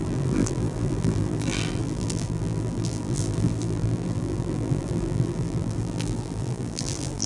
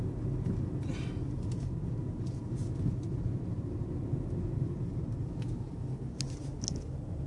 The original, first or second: second